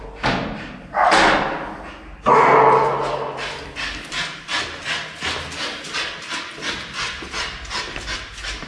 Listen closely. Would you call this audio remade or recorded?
recorded